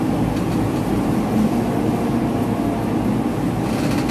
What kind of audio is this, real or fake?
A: real